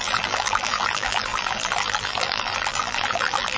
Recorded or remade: remade